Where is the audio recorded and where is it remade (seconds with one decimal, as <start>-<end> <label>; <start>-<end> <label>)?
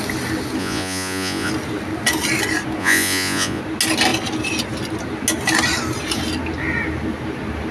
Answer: 0.0-0.6 recorded; 0.6-1.5 remade; 1.5-2.8 recorded; 2.8-3.6 remade; 3.6-7.7 recorded